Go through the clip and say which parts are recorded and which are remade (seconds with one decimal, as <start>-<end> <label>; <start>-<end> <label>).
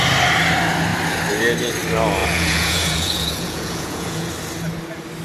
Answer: 0.0-2.2 recorded; 2.2-4.3 remade; 4.3-5.2 recorded